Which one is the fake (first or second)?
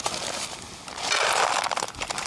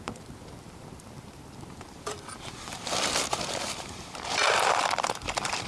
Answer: second